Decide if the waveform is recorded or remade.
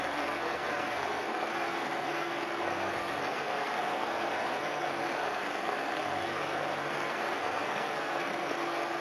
remade